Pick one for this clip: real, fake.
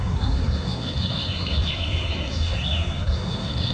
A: fake